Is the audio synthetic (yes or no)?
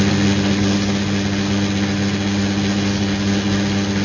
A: no